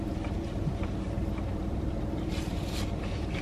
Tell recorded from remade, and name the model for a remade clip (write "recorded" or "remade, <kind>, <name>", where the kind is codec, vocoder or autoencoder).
remade, vocoder, BigVGAN v2